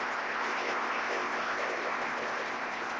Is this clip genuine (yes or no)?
no